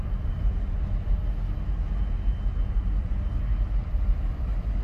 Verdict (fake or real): real